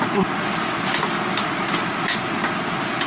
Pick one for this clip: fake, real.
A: real